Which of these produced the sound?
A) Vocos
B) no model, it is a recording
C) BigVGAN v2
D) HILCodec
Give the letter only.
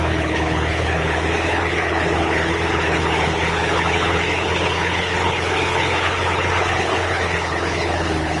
D